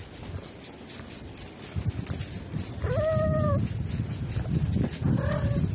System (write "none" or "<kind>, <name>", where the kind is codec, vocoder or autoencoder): none